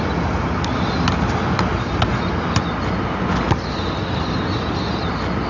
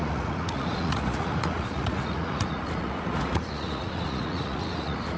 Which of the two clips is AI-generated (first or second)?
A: second